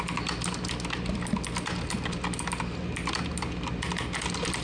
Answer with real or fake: real